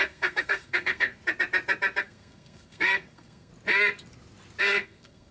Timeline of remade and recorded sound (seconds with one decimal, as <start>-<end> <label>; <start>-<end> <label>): 0.0-1.2 remade; 1.2-2.0 recorded; 2.0-3.5 remade; 3.5-4.6 recorded; 4.6-5.3 remade